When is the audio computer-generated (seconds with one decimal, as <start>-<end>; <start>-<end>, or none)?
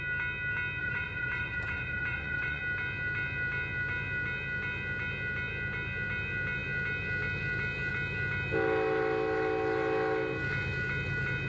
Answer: 0.8-2.6